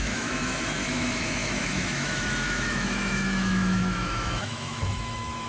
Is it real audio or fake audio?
fake